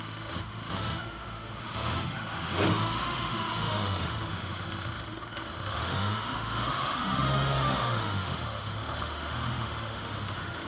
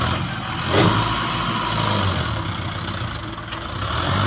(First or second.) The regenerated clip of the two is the first